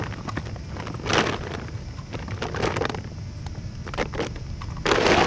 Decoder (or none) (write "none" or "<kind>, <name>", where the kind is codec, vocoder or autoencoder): none